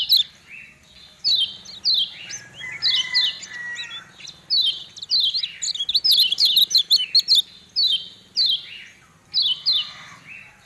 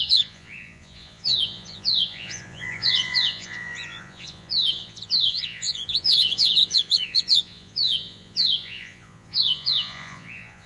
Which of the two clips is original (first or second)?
first